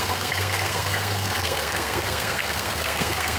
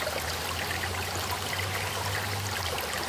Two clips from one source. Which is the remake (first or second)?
first